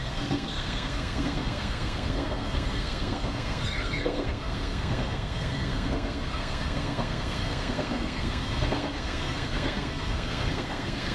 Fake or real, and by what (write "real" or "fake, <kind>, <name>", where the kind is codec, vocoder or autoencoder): fake, codec, SNAC